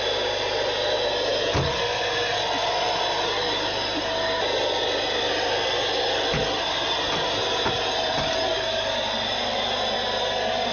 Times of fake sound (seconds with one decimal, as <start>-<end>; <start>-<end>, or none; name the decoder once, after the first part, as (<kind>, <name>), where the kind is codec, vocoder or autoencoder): none